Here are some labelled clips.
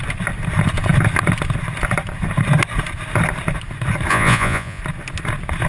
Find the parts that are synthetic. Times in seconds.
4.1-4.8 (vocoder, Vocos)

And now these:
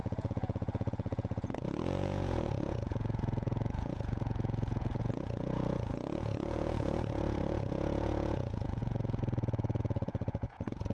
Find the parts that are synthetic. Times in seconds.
0.0-10.9 (vocoder, Vocos)

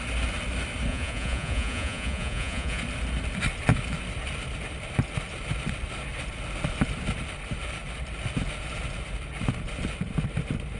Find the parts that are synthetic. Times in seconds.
0.9-2.8 (vocoder, Vocos)

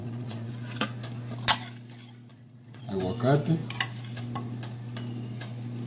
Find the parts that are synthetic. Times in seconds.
0.0-0.5 (vocoder, Vocos); 2.3-3.0

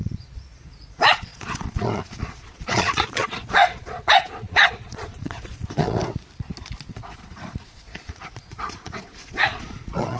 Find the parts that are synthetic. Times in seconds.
0.0-6.0 (vocoder, Vocos); 6.9-10.2

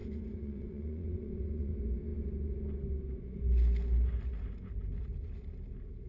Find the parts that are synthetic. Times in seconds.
0.0-1.7 (vocoder, Vocos)

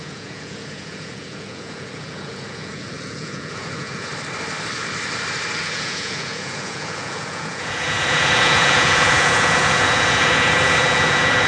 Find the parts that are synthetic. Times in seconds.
0.0-4.1 (vocoder, Vocos); 5.6-11.5

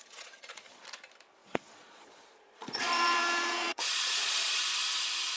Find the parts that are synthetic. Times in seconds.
0.0-0.8 (vocoder, Vocos); 1.4-4.6